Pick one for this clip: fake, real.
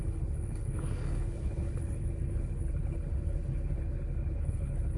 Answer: fake